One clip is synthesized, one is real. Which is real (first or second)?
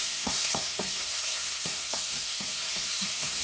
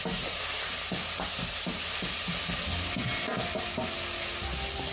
second